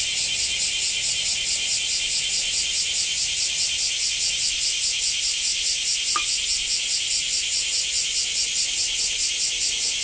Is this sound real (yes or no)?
yes